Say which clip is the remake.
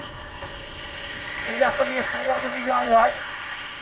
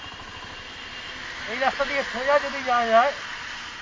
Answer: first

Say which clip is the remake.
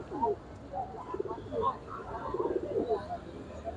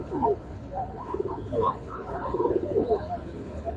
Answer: second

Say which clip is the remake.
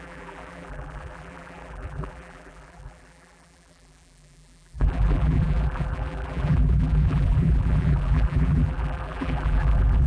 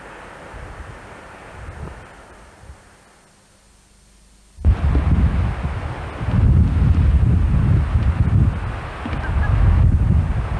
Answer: first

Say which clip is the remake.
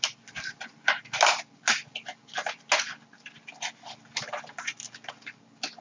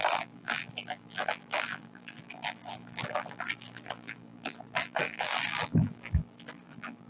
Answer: second